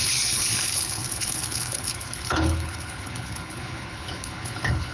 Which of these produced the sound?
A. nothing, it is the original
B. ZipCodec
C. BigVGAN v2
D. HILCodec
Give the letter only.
D